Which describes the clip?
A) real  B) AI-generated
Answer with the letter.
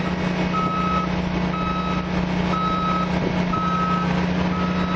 A